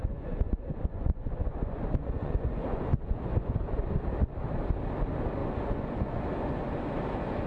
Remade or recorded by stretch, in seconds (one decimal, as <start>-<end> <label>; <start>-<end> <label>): 0.0-3.6 remade; 3.6-5.4 recorded; 5.4-6.2 remade; 6.2-7.5 recorded